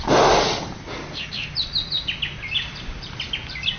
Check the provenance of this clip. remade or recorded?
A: recorded